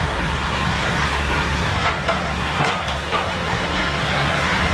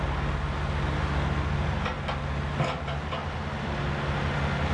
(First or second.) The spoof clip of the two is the first